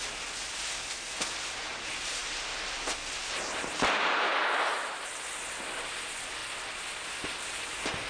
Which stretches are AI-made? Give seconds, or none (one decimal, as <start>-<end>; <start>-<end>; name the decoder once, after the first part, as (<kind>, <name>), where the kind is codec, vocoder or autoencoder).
none